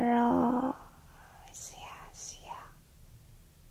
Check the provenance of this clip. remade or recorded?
recorded